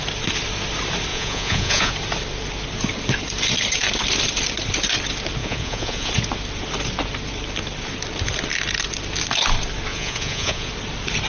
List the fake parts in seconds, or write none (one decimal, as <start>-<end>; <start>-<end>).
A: 1.1-1.9; 5.4-6.1; 9.9-10.7